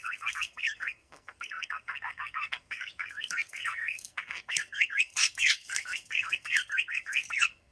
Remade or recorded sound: remade